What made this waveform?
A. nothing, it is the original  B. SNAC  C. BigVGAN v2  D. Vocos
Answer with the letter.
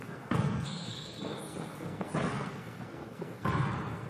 B